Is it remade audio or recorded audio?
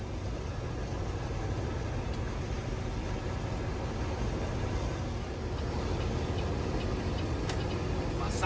recorded